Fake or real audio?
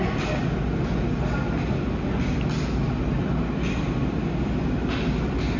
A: real